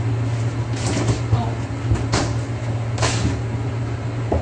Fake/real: real